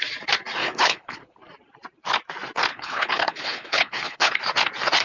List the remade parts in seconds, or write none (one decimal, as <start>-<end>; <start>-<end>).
0.6-1.4; 2.7-4.4